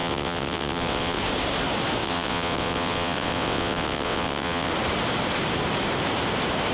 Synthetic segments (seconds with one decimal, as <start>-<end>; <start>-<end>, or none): 0.0-1.2; 2.0-4.7